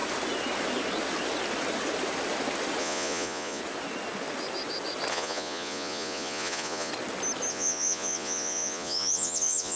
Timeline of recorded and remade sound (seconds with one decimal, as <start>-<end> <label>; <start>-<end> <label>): 0.0-2.8 recorded; 2.8-3.6 remade; 3.6-5.1 recorded; 5.1-6.9 remade; 6.9-7.5 recorded; 7.5-9.8 remade